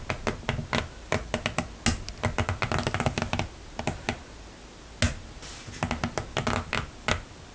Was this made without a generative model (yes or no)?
yes